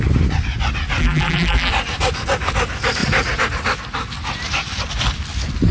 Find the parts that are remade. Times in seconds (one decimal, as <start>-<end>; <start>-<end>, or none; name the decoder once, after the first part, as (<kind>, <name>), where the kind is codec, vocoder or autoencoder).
1.0-1.7 (vocoder, BigVGAN v2)